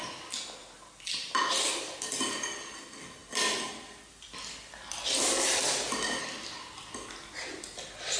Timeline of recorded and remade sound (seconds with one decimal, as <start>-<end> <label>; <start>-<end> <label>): 0.0-8.2 recorded